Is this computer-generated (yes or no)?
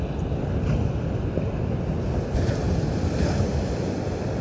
no